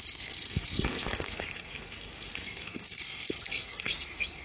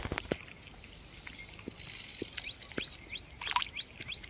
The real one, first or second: second